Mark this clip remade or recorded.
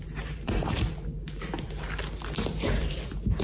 remade